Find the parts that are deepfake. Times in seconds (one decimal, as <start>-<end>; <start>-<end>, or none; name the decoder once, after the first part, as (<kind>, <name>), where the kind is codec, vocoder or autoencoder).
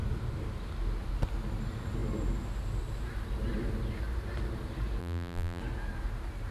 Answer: 5.0-5.6 (vocoder, BigVGAN v2)